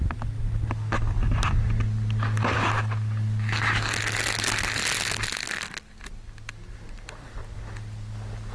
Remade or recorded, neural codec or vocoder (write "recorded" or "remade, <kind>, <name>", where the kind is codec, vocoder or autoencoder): recorded